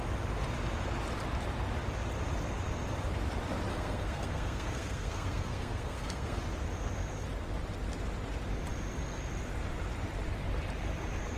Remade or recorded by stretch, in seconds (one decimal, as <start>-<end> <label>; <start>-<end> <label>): 0.0-3.7 recorded; 3.7-6.4 remade; 6.4-11.4 recorded